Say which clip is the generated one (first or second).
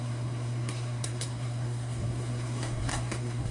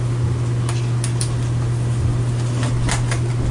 first